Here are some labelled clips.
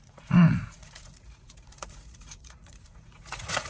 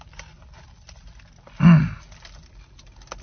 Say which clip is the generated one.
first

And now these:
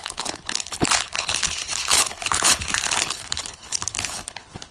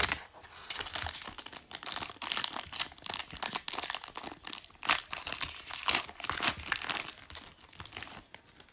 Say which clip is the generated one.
first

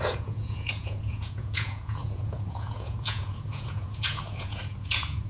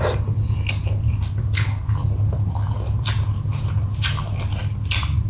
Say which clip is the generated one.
first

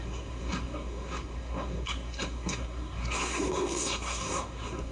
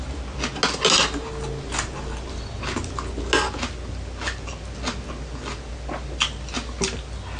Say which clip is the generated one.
first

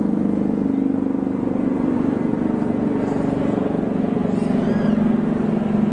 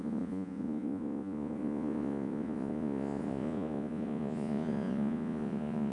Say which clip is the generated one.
second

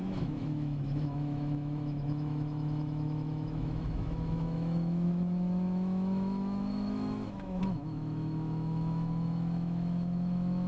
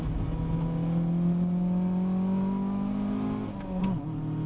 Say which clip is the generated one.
first